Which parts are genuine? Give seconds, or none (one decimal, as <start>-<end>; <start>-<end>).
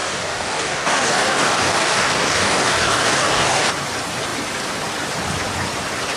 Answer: 3.7-6.2